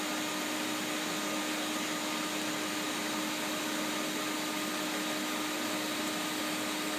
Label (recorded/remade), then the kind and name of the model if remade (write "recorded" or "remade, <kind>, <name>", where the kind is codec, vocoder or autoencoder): recorded